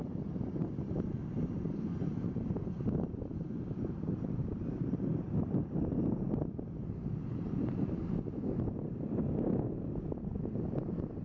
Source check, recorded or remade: recorded